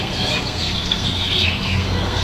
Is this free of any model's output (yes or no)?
no